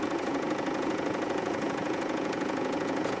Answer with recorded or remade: remade